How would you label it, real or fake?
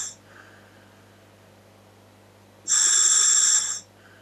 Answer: real